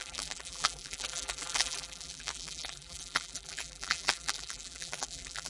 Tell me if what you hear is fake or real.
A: fake